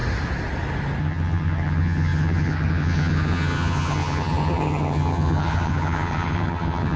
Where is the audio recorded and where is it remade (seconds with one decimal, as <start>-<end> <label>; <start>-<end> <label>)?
0.0-1.0 recorded; 1.0-7.0 remade